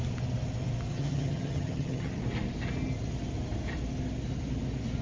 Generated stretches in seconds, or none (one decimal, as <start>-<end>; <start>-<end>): 0.9-2.2